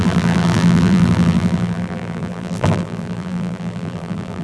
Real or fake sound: fake